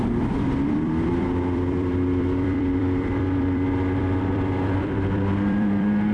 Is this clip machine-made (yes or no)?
yes